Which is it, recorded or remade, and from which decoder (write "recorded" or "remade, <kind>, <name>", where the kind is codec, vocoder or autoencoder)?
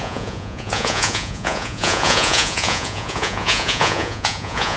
remade, vocoder, Vocos